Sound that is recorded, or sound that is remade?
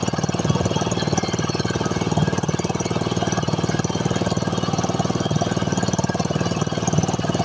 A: recorded